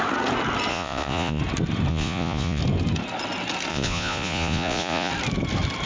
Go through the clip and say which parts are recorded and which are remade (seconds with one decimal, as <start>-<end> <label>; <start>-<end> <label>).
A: 0.0-0.7 recorded; 0.7-1.4 remade; 1.4-1.9 recorded; 1.9-2.6 remade; 2.6-3.7 recorded; 3.7-5.1 remade; 5.1-5.9 recorded